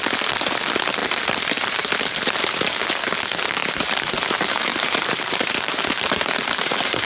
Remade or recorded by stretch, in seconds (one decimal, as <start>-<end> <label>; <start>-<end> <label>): 0.0-3.6 recorded; 3.6-7.1 remade